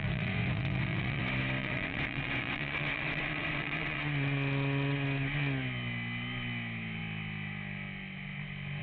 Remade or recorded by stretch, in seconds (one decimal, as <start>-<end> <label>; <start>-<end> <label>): 0.0-1.2 remade; 1.2-1.6 recorded; 1.6-4.0 remade; 4.0-8.8 recorded